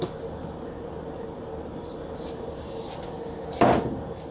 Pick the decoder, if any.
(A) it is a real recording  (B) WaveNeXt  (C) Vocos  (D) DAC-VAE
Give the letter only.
A